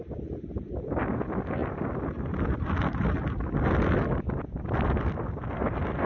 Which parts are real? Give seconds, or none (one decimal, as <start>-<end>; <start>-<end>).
0.0-6.1